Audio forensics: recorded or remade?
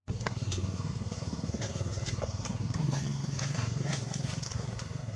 remade